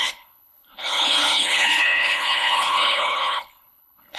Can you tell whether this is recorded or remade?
remade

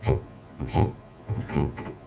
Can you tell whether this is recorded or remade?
remade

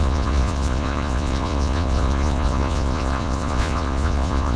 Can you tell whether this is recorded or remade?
remade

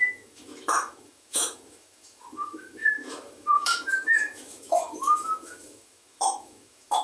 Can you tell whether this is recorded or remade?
remade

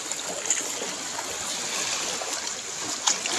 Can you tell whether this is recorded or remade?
recorded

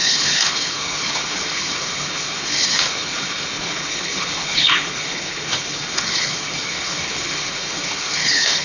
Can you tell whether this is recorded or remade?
remade